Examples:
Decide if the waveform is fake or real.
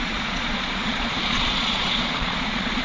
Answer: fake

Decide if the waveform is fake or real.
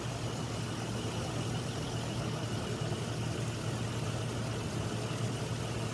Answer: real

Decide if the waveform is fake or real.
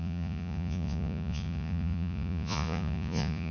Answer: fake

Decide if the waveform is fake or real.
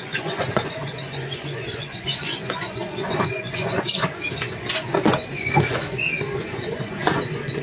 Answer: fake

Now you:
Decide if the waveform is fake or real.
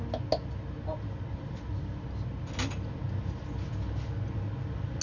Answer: real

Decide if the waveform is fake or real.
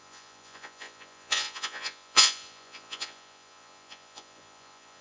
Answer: fake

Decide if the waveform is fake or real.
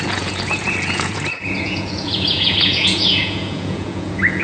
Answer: fake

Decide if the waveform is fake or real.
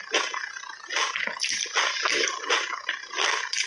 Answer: real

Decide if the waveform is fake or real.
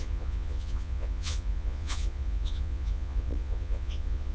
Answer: fake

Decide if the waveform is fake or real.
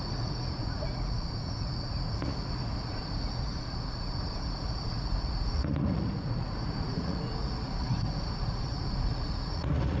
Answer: fake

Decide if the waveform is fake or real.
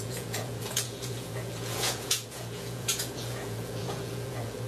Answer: fake